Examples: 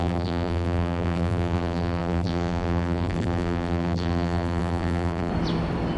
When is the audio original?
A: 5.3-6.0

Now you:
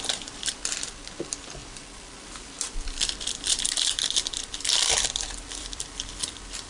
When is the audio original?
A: none

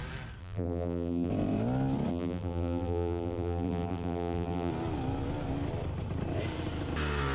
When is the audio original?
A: 0.0-0.4; 1.3-2.1; 4.7-7.3

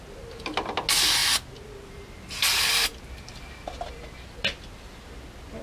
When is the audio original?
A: 0.0-5.6